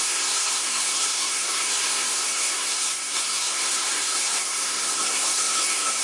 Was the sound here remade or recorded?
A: remade